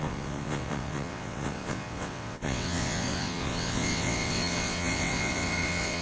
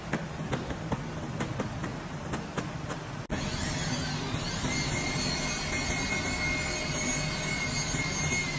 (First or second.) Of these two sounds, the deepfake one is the first